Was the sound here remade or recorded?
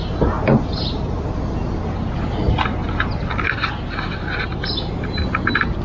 recorded